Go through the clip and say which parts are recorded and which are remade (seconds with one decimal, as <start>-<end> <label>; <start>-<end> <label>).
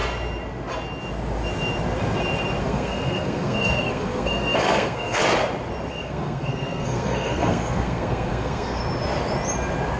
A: 0.0-2.6 recorded; 2.6-5.2 remade; 5.2-5.9 recorded; 5.9-8.8 remade; 8.8-10.0 recorded